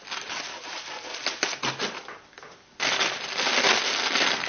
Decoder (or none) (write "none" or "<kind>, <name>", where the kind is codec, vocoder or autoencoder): none